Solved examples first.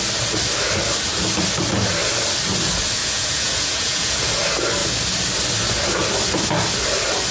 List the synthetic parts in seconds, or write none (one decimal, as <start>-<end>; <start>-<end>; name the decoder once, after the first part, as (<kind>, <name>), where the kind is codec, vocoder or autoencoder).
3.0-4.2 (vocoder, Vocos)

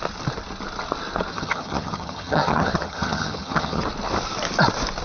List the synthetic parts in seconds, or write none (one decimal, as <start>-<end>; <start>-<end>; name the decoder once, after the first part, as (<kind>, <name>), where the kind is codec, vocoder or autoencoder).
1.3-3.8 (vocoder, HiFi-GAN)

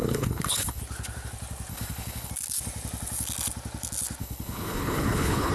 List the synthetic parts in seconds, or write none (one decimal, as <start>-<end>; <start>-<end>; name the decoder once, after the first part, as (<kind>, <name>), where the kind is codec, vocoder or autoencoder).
0.0-0.8 (codec, HILCodec); 1.7-2.3; 4.2-5.5

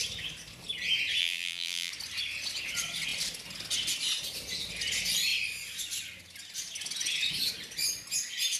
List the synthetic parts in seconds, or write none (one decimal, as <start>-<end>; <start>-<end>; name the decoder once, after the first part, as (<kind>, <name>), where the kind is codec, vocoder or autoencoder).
1.2-1.9 (vocoder, BigVGAN v2)

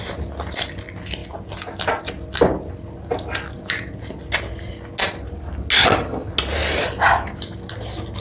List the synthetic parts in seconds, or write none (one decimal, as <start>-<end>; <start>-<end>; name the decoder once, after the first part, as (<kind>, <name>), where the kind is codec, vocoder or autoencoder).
5.8-6.3 (vocoder, HiFi-GAN)

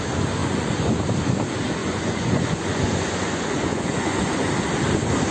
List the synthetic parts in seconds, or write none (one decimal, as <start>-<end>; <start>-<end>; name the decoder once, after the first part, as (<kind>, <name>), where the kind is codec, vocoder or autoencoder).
0.4-1.0 (vocoder, Vocos); 1.8-4.5

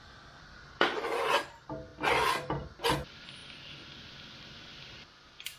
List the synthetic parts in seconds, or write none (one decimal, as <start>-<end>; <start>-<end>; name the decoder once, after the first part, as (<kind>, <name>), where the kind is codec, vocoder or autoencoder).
none

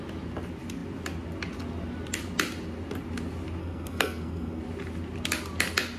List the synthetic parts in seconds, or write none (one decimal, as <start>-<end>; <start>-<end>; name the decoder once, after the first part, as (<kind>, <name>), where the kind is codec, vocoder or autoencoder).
3.6-4.6 (codec, SNAC)